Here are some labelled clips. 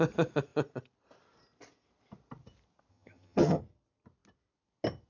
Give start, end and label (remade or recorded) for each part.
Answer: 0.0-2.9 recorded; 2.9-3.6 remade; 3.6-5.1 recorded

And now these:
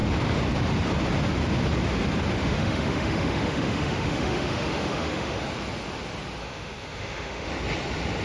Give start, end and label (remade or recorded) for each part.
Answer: 0.0-2.4 recorded; 2.4-5.4 remade; 5.4-6.4 recorded; 6.4-7.5 remade; 7.5-8.2 recorded

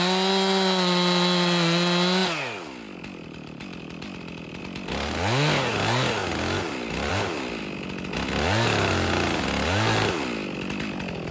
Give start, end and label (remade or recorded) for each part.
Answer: 0.0-11.3 recorded

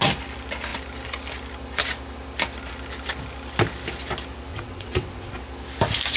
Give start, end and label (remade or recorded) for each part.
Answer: 0.0-4.5 recorded; 4.5-5.4 remade; 5.4-6.2 recorded

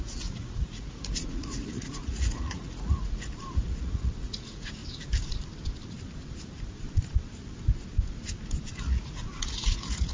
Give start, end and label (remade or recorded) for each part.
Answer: 0.0-4.8 remade; 4.8-8.8 recorded; 8.8-10.1 remade

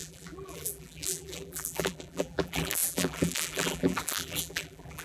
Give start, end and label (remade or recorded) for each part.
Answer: 0.0-5.0 remade

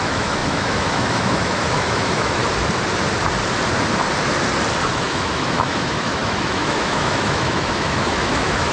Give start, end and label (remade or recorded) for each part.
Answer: 0.0-2.4 remade; 2.4-4.9 recorded; 4.9-8.7 remade

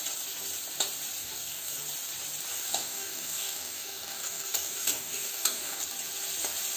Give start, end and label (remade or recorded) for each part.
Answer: 0.0-1.2 recorded; 1.2-1.8 remade; 1.8-2.5 recorded; 2.5-5.8 remade; 5.8-6.8 recorded